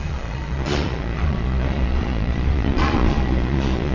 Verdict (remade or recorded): remade